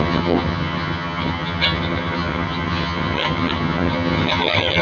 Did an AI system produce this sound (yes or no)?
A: yes